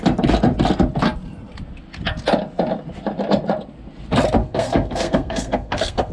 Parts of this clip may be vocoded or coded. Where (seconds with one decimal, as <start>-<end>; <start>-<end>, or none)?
4.4-6.1